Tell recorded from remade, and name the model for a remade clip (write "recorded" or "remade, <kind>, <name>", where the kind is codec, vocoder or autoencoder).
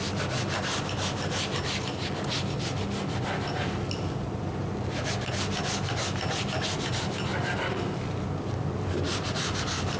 recorded